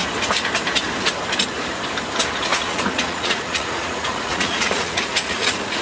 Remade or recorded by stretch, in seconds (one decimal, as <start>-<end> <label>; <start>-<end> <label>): 0.0-2.5 recorded; 2.5-5.8 remade